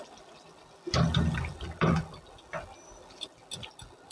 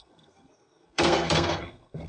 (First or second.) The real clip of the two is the first